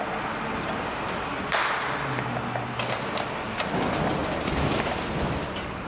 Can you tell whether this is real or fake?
real